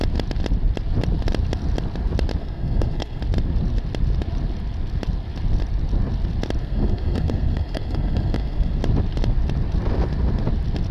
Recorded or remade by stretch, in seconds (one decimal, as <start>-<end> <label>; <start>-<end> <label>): 0.0-2.4 recorded; 2.4-3.2 remade; 3.2-6.6 recorded; 6.6-8.8 remade; 8.8-10.9 recorded

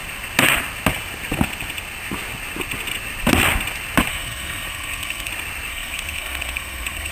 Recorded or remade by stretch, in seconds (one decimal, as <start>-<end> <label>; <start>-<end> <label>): 0.0-4.1 recorded; 4.1-5.3 remade; 5.3-5.7 recorded; 5.7-7.1 remade